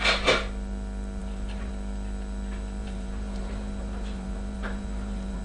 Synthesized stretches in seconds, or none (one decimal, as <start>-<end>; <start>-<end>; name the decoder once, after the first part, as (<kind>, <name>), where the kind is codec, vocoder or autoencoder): 1.2-1.7 (vocoder, BigVGAN v2); 2.8-5.4